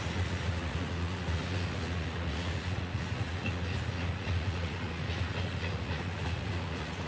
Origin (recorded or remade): remade